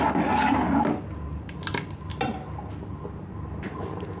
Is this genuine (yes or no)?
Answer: yes